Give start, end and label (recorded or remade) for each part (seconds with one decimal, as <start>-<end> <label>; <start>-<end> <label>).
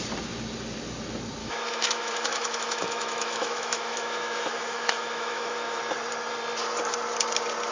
0.0-1.4 recorded; 1.4-5.8 remade; 5.8-7.7 recorded